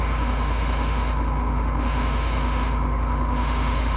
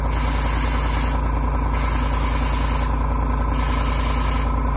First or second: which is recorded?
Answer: second